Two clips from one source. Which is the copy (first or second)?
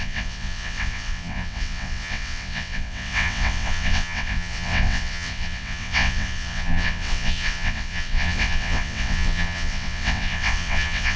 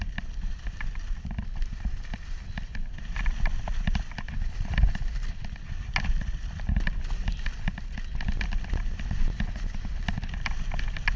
first